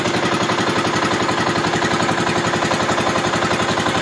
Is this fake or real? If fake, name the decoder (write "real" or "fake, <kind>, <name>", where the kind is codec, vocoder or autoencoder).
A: real